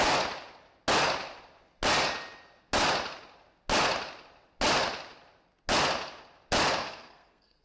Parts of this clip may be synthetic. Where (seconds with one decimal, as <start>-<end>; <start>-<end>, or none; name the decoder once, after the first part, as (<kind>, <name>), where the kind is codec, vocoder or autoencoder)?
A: 6.8-7.6 (codec, SNAC)

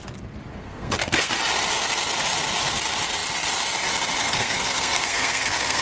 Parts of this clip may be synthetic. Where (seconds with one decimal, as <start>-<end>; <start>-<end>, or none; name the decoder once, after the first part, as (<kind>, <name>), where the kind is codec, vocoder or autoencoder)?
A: 0.6-1.3 (codec, SNAC); 4.2-5.8

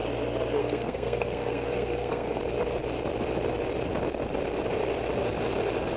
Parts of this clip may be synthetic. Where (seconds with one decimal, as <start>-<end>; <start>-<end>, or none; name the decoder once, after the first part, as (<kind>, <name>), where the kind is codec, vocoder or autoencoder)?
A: 0.6-2.4 (codec, SNAC)